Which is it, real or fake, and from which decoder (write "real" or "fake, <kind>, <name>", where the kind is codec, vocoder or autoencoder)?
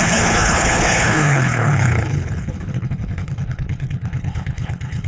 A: fake, codec, HILCodec